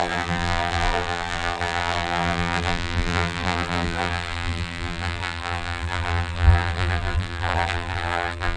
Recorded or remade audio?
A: remade